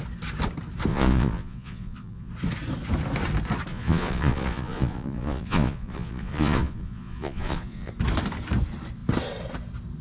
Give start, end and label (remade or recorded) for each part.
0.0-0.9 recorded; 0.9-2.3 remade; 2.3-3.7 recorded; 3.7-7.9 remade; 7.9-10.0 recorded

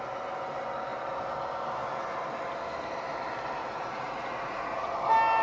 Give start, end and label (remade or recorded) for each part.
0.0-3.6 recorded; 3.6-4.9 remade; 4.9-5.4 recorded